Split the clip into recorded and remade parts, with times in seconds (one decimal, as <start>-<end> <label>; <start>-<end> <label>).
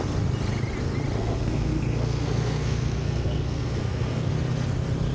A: 0.0-1.2 recorded; 1.2-4.3 remade; 4.3-5.1 recorded